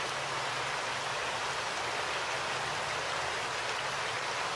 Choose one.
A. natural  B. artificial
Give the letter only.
A